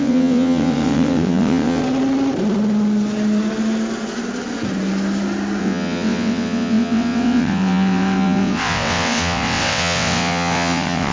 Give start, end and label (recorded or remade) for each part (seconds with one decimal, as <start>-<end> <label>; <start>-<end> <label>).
0.0-1.8 remade; 1.8-5.6 recorded; 5.6-11.1 remade